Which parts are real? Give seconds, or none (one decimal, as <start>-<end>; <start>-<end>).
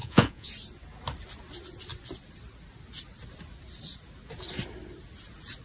0.5-5.6